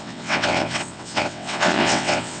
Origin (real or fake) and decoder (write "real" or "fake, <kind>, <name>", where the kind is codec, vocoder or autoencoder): fake, vocoder, WaveNeXt